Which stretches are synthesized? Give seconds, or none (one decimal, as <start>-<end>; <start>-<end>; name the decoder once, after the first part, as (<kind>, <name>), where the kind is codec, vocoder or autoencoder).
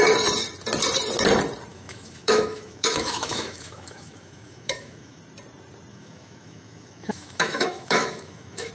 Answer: 1.7-5.2 (autoencoder, DAC-VAE); 5.9-8.7